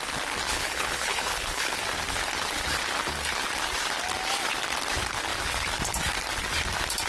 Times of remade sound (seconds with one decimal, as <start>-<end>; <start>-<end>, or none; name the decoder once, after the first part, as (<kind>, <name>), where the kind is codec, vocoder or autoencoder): 0.5-1.8 (codec, HILCodec)